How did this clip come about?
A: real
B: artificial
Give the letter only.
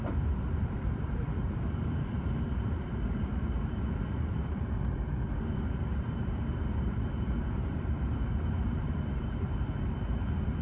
B